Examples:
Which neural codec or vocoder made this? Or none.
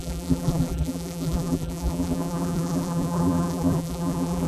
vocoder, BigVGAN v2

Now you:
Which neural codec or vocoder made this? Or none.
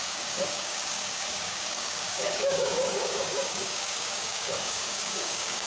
codec, DAC